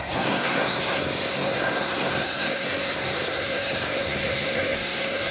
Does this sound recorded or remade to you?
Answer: remade